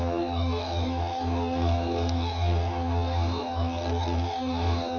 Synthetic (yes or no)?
yes